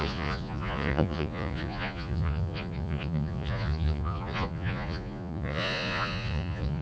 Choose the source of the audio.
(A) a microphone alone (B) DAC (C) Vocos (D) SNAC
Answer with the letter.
C